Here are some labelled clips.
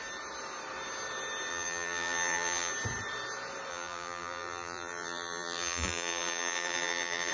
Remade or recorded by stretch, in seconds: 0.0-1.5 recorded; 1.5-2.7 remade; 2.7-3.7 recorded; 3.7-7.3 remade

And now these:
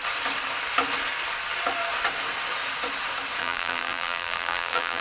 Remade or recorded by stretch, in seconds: 0.0-3.4 recorded; 3.4-5.0 remade